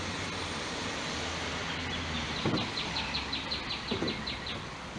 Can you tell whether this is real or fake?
real